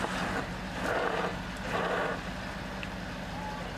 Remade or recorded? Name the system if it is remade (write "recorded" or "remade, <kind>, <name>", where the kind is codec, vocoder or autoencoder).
recorded